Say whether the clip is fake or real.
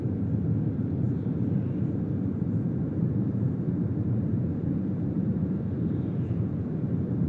fake